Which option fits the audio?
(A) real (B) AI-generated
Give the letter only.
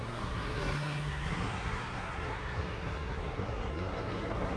B